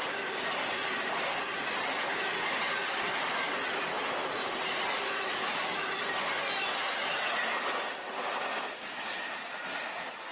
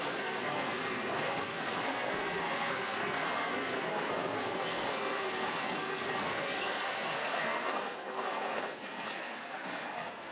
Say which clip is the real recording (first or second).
first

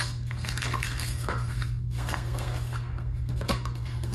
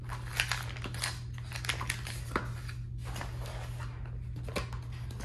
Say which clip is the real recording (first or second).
second